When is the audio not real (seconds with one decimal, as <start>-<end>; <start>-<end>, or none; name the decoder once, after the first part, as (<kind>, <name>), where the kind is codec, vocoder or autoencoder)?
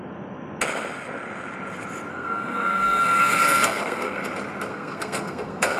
2.1-4.2 (codec, SNAC); 4.7-5.8